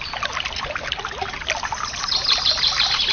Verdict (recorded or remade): recorded